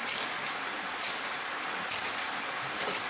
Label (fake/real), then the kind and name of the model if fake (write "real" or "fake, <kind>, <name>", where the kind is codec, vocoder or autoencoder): real